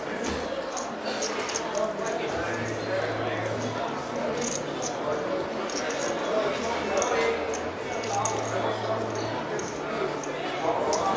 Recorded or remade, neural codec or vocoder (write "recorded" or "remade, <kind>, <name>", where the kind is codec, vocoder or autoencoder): recorded